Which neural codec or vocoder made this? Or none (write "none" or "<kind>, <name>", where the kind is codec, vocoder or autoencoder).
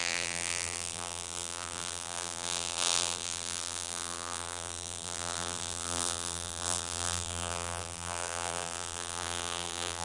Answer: vocoder, BigVGAN v2